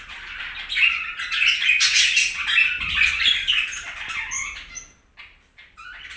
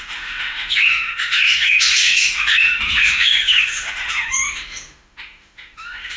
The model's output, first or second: second